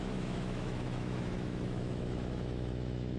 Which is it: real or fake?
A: fake